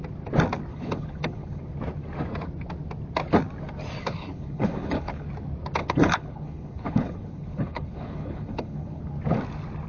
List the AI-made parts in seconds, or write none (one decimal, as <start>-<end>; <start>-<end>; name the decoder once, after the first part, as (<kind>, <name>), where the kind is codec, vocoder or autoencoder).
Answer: 0.7-1.6 (codec, HILCodec); 4.0-5.3; 5.8-9.0